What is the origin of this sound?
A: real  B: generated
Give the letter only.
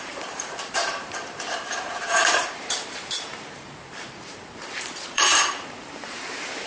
B